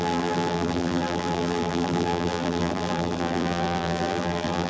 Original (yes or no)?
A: no